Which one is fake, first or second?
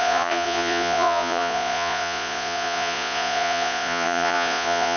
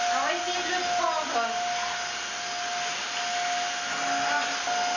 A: first